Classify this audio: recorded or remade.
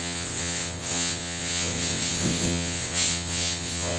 remade